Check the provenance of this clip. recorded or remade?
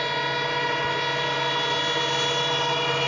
recorded